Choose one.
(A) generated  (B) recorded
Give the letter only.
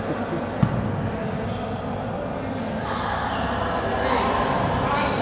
B